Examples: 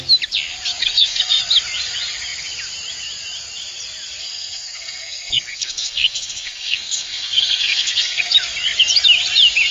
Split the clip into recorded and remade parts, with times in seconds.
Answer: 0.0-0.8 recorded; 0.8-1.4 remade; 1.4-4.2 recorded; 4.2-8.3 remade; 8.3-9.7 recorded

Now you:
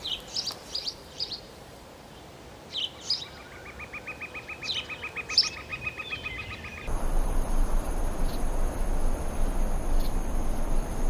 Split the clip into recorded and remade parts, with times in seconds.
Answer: 0.0-0.8 recorded; 0.8-2.2 remade; 2.2-5.7 recorded; 5.7-7.9 remade; 7.9-11.1 recorded

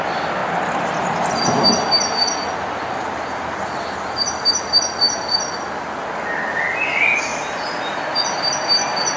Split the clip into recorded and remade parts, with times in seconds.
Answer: 0.0-9.2 recorded

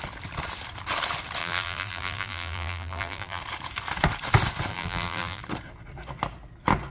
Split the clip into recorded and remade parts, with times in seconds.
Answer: 0.0-1.4 recorded; 1.4-3.4 remade; 3.4-4.7 recorded; 4.7-5.4 remade; 5.4-6.9 recorded

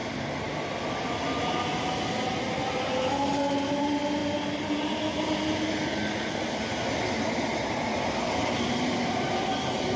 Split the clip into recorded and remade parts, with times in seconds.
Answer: 0.0-10.0 recorded

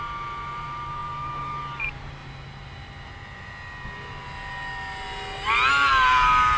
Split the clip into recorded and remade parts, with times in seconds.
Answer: 0.0-2.2 remade; 2.2-5.7 recorded; 5.7-6.6 remade

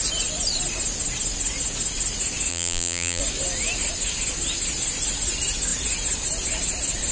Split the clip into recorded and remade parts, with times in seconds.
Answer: 0.0-2.5 recorded; 2.5-3.2 remade; 3.2-7.1 recorded

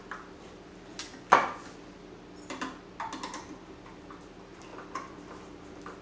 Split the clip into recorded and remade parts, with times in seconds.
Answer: 0.0-6.0 recorded